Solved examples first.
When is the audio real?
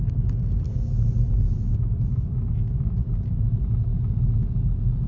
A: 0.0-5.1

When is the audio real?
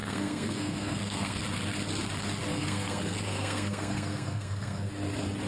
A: 1.4-2.5; 4.9-5.5